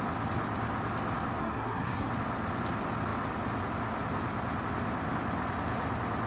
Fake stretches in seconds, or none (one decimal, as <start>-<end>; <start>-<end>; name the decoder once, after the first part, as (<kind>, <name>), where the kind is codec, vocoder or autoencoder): 1.4-2.1 (codec, SNAC)